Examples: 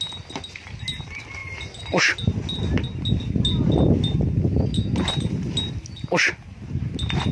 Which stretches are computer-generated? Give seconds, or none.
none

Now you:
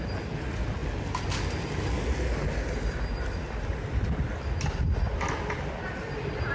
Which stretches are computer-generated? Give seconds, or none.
none

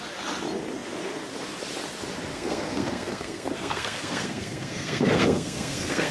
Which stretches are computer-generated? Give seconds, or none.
2.3-6.1 (codec, SNAC)

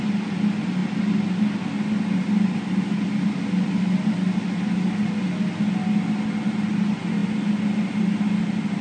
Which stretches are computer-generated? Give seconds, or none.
none

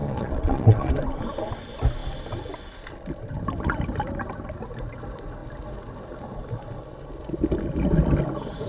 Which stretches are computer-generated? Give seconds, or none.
0.0-0.9 (vocoder, Vocos)

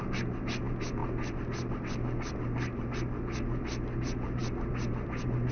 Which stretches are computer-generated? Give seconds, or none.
none